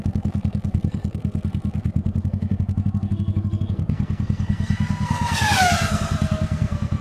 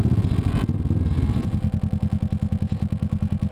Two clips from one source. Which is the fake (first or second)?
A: first